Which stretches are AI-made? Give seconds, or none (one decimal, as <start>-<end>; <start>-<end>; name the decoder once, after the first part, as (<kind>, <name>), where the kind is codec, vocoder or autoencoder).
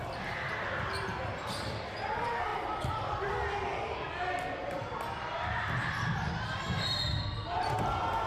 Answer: none